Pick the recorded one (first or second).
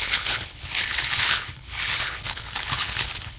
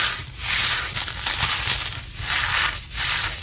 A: second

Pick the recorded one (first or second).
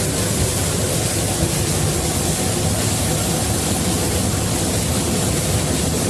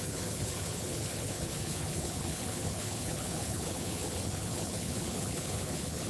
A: first